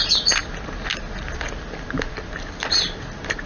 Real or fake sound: real